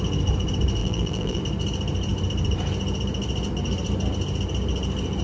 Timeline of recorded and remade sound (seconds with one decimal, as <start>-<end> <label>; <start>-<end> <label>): 0.0-0.8 recorded; 0.8-1.4 remade; 1.4-5.2 recorded